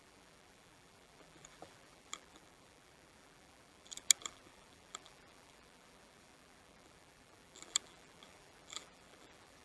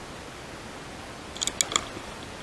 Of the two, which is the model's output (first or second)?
first